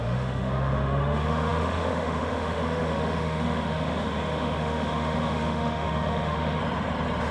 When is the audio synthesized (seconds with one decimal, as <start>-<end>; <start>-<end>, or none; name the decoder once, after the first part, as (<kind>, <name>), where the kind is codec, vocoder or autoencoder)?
0.0-6.6 (autoencoder, DAC-VAE)